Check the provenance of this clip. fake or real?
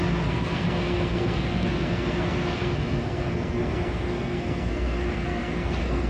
fake